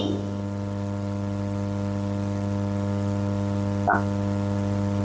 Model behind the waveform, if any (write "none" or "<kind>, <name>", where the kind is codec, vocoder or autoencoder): none